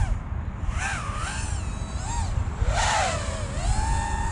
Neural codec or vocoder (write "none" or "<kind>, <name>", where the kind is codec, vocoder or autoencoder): none